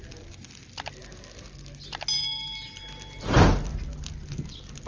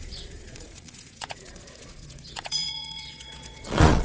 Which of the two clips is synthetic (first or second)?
second